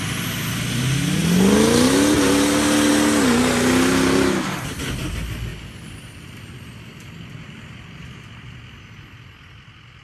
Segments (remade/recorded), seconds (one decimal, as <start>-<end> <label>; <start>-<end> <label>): 0.0-5.5 recorded; 5.5-6.3 remade; 6.3-10.0 recorded